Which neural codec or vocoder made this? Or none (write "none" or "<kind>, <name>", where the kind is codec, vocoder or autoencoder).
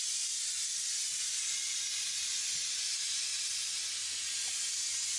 none